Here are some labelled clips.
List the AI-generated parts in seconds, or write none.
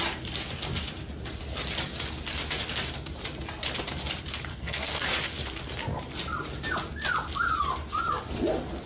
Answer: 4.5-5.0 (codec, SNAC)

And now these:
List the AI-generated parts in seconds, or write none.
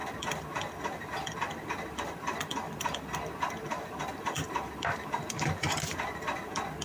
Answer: 0.0-6.8 (vocoder, BigVGAN v2)